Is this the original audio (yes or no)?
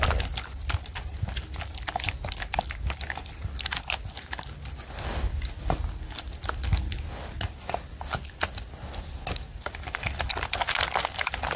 yes